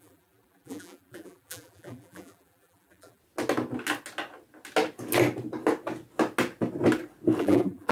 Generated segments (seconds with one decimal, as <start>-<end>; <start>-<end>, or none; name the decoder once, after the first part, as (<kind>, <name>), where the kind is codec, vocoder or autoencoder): 0.0-3.2 (vocoder, BigVGAN v2); 7.4-7.9